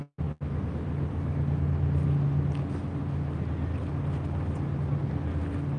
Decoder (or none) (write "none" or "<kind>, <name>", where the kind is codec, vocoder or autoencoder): none